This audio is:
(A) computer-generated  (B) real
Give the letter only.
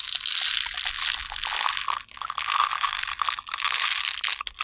B